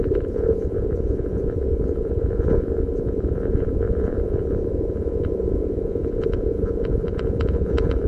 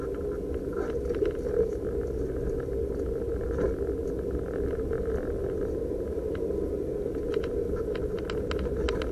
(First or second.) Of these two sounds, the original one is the second